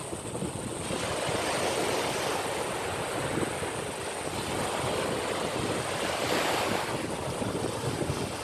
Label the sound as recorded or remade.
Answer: recorded